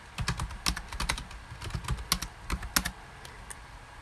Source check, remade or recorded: recorded